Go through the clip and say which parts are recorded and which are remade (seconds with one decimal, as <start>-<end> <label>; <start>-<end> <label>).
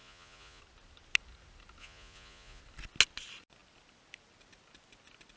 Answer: 0.0-0.6 remade; 0.6-1.8 recorded; 1.8-2.6 remade; 2.6-5.4 recorded